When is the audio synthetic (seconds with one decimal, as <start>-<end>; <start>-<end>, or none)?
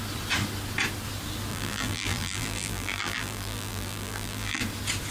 1.5-4.6